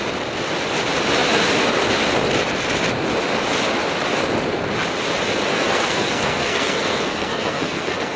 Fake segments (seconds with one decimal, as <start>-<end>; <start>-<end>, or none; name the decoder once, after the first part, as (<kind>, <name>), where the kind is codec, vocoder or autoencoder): 5.5-8.2 (codec, SNAC)